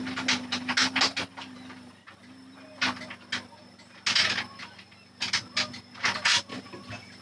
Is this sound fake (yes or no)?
no